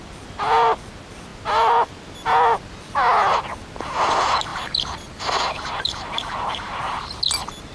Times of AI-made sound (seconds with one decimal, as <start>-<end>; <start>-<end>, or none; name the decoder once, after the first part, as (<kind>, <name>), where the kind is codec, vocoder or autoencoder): 4.5-7.2 (vocoder, BigVGAN v2)